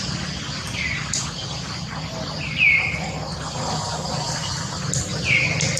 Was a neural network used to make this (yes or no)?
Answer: no